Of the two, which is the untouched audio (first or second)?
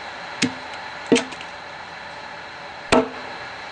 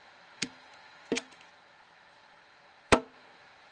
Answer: first